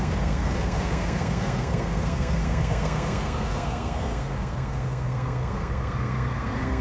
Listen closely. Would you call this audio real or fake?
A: fake